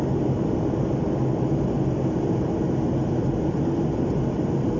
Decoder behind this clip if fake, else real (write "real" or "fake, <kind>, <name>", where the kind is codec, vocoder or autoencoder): real